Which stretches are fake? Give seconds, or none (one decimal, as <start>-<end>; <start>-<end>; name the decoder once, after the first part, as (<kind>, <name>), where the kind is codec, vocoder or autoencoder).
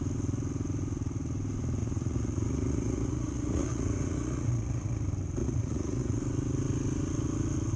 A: 1.8-5.0 (vocoder, Vocos); 5.4-6.2